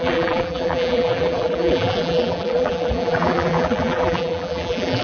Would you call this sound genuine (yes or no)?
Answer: no